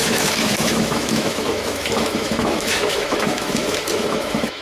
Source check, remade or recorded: remade